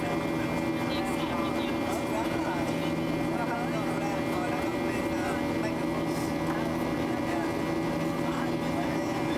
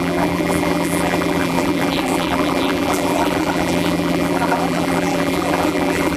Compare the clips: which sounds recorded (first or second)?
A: first